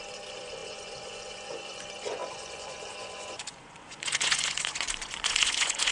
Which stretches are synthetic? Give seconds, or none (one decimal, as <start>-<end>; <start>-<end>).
0.0-5.9